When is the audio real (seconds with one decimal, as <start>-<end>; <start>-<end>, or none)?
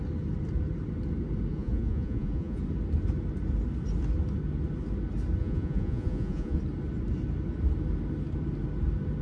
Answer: 0.0-1.5; 2.6-5.4; 6.6-9.2